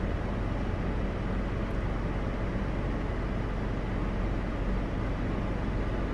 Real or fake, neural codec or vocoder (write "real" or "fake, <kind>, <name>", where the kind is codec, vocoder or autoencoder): real